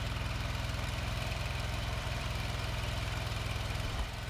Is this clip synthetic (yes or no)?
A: yes